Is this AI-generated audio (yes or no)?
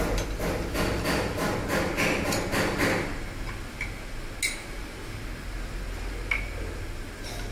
no